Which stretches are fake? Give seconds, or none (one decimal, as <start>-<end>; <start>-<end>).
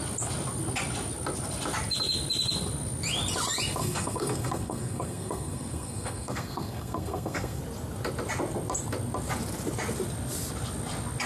3.8-7.6